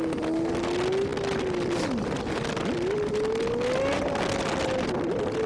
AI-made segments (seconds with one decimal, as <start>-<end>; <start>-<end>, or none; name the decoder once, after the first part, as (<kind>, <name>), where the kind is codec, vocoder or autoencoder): none